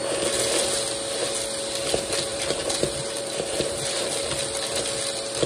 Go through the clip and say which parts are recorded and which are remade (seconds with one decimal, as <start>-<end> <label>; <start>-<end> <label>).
0.0-2.3 recorded; 2.3-4.1 remade; 4.1-5.5 recorded